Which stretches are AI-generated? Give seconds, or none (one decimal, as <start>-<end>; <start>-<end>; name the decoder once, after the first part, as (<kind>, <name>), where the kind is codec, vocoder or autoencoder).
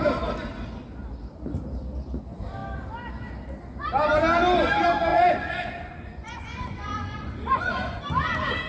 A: 5.1-8.0 (vocoder, Vocos)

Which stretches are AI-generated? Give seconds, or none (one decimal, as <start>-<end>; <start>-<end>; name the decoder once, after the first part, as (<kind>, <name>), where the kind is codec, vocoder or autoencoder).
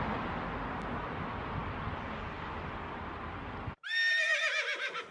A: none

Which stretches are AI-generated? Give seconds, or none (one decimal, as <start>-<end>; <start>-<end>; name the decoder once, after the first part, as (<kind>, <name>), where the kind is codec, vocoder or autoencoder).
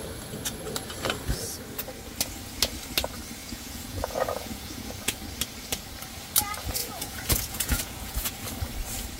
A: 3.4-5.2 (vocoder, Vocos); 6.8-8.3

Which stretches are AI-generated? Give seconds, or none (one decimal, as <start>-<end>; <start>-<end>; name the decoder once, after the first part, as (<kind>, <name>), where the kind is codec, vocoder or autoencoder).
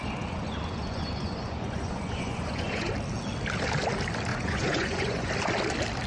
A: 0.0-2.9 (vocoder, Vocos); 4.3-5.3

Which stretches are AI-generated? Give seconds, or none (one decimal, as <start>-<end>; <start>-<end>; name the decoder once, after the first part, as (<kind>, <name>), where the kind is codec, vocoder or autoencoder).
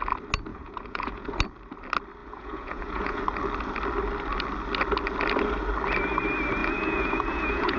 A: 0.5-1.3 (vocoder, Vocos); 2.2-3.2; 6.6-7.8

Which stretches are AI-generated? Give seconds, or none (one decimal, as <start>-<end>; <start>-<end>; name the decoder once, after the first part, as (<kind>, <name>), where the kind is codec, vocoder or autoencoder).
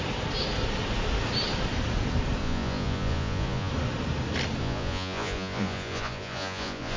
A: 2.4-3.7 (vocoder, Vocos); 4.6-7.0